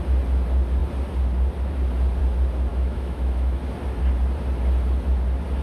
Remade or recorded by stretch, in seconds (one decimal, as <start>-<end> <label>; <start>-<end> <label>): 0.0-2.7 recorded; 2.7-3.6 remade; 3.6-5.6 recorded